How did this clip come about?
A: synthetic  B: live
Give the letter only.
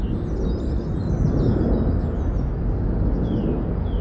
B